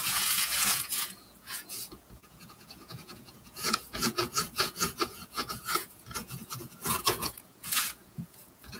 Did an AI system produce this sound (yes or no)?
yes